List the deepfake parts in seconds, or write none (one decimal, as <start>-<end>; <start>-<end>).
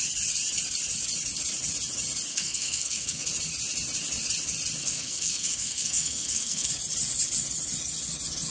2.3-3.3; 4.8-6.7